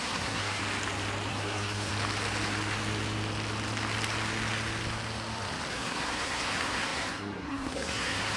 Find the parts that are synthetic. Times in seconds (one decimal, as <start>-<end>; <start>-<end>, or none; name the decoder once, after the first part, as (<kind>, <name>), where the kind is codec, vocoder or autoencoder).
0.0-0.6 (codec, SNAC); 1.3-1.9; 5.7-8.4